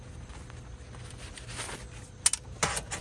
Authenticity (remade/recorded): recorded